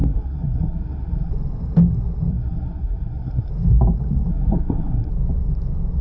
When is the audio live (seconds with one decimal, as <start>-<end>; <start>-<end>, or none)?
1.3-2.3; 3.5-4.3; 5.1-6.0